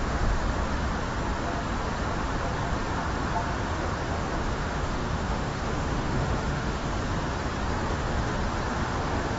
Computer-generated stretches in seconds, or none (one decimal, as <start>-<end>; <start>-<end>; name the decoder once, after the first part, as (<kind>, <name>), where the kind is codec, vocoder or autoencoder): 0.0-0.4 (autoencoder, DAC-VAE); 4.0-6.9; 7.9-8.3; 9.0-9.4